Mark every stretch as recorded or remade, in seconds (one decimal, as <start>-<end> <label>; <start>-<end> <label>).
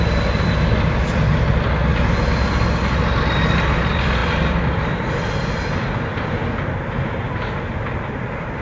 0.0-1.9 remade; 1.9-3.8 recorded; 3.8-8.6 remade